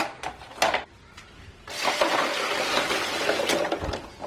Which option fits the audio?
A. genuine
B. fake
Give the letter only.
A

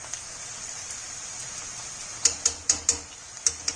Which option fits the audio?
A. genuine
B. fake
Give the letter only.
A